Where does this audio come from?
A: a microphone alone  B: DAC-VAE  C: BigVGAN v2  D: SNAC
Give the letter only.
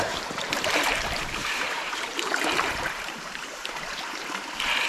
C